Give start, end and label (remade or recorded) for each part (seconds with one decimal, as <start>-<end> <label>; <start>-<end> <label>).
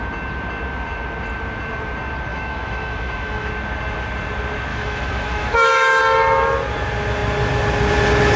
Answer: 0.0-2.3 recorded; 2.3-3.5 remade; 3.5-4.7 recorded; 4.7-6.0 remade; 6.0-8.4 recorded